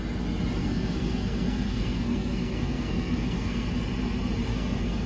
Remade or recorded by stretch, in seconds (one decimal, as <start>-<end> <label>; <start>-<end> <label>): 0.0-0.6 recorded; 0.6-3.7 remade; 3.7-4.5 recorded; 4.5-5.1 remade